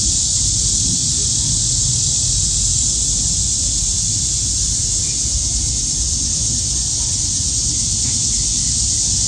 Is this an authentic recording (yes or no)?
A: yes